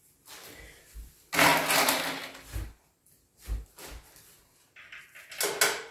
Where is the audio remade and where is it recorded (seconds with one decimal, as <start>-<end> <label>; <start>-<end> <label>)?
0.0-5.9 recorded